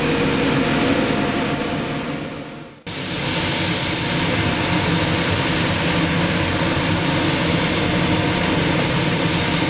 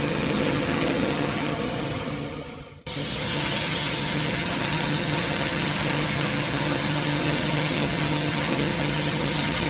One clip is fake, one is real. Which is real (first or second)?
first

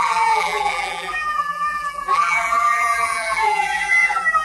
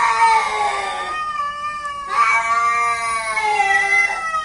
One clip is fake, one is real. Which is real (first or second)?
second